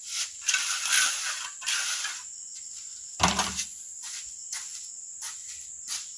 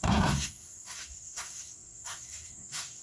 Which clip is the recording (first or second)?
first